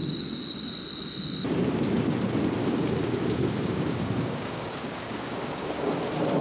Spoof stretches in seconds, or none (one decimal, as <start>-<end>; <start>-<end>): 0.0-0.6; 2.6-5.9